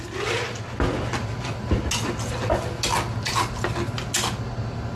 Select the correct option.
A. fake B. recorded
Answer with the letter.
B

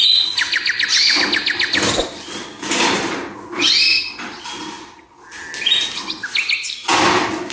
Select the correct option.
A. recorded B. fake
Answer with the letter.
A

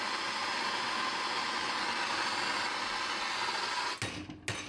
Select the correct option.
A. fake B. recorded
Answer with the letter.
B